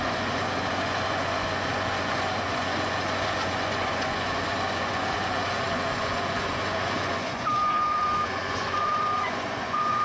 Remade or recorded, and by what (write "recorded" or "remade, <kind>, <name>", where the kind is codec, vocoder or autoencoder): remade, vocoder, Vocos